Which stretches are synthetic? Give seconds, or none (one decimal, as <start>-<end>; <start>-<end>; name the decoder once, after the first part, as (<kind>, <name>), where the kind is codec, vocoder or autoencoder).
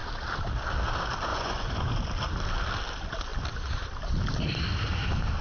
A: 1.3-1.8 (vocoder, Vocos)